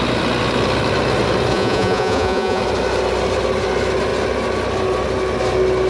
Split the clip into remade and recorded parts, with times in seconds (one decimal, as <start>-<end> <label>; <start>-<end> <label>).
0.0-1.5 recorded; 1.5-2.6 remade; 2.6-5.9 recorded